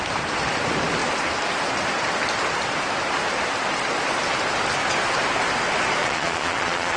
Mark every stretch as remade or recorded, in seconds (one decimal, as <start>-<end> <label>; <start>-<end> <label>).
0.0-6.0 recorded; 6.0-7.0 remade